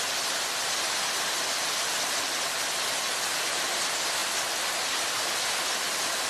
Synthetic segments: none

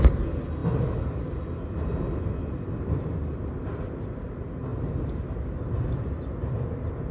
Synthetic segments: none

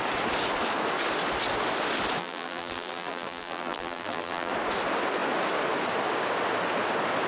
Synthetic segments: 2.2-4.5 (vocoder, BigVGAN v2)